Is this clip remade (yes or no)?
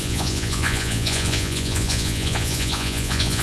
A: yes